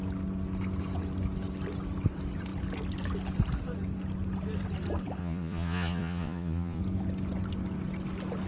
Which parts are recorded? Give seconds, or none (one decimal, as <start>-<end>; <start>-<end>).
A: 0.0-5.2; 6.8-8.5